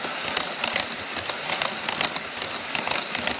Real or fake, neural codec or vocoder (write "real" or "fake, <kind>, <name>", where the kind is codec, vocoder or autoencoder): real